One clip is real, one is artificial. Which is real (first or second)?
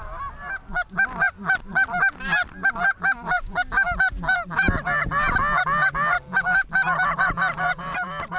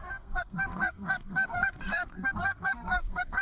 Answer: first